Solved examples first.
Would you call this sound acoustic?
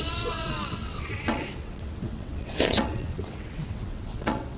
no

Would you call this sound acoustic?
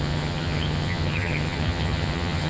no